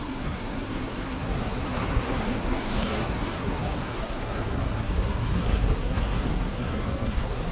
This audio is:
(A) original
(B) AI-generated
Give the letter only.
B